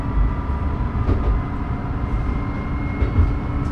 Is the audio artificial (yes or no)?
no